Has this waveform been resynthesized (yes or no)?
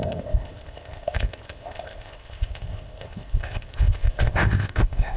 yes